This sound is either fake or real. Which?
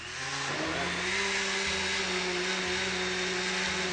real